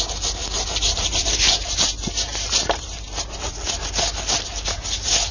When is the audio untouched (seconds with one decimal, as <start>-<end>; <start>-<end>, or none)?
0.0-0.4; 3.6-5.3